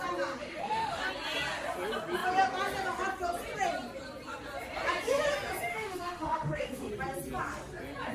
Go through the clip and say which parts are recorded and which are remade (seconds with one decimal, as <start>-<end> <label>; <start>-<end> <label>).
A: 0.0-0.4 recorded; 0.4-1.0 remade; 1.0-5.7 recorded; 5.7-6.9 remade; 6.9-8.1 recorded